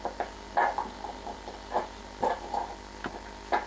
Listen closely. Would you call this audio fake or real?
real